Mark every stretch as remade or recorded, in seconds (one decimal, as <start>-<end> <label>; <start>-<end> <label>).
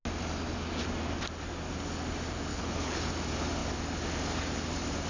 0.0-2.5 recorded; 2.5-3.1 remade; 3.1-5.1 recorded